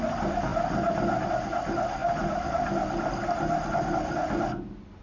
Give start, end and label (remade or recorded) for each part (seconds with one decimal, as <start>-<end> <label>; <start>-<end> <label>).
0.0-5.0 recorded